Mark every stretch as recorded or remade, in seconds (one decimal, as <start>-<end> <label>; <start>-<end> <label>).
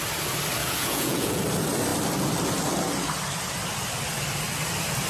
0.0-0.6 recorded; 0.6-1.4 remade; 1.4-5.1 recorded